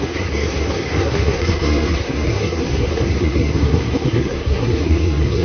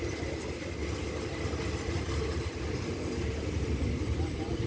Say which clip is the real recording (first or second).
second